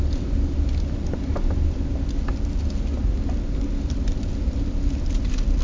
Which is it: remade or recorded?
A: recorded